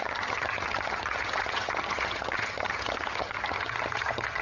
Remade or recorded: remade